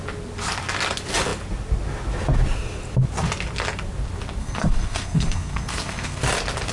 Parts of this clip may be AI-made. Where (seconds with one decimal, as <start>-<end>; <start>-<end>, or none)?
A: 4.4-6.2